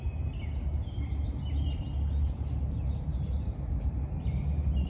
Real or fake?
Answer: real